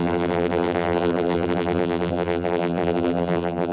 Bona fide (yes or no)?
no